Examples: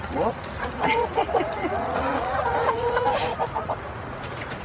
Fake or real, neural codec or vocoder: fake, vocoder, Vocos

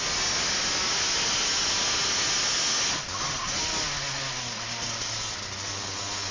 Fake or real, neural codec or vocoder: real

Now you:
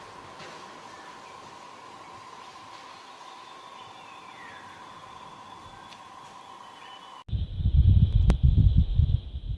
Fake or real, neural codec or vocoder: real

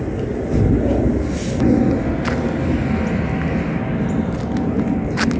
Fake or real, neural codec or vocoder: real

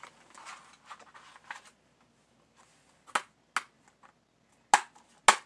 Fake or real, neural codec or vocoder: real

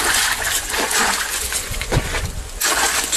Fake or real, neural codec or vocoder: fake, vocoder, Vocos